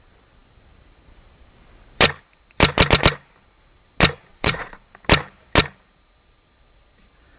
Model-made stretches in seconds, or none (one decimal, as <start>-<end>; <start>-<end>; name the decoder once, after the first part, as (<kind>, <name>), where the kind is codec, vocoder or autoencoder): 4.3-4.8 (vocoder, Vocos)